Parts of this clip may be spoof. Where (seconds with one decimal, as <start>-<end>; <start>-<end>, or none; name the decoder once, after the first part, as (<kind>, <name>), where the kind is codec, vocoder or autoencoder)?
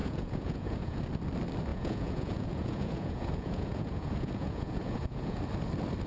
0.0-1.0 (vocoder, Vocos); 1.7-5.4